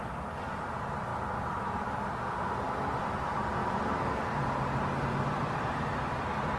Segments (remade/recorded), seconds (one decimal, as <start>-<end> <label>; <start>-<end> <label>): 0.0-6.6 recorded